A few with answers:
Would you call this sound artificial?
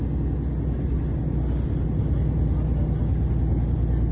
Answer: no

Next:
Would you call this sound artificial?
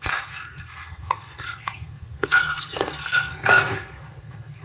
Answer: yes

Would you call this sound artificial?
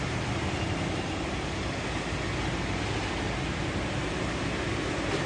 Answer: no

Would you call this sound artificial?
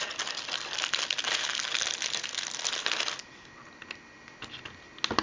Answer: no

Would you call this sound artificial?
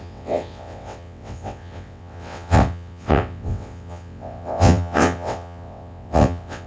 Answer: yes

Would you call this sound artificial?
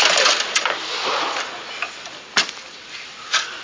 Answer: no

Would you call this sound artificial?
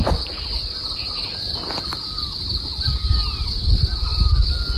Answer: yes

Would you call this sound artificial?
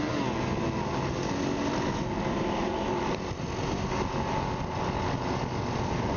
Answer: no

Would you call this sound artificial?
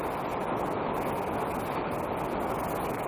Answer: no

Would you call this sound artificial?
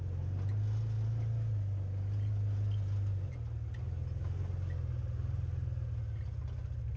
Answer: no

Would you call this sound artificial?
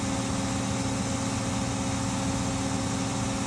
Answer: no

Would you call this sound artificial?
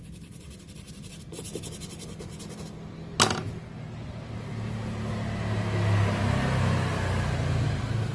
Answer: no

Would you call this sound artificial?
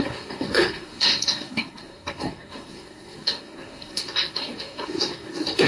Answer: yes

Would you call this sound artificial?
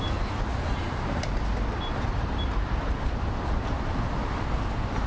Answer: no